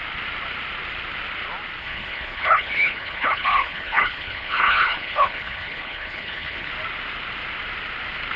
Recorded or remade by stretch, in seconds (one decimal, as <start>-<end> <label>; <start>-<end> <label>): 0.0-1.8 recorded; 1.8-6.7 remade; 6.7-8.4 recorded